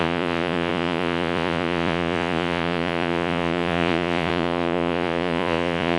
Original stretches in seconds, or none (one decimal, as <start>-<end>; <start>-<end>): none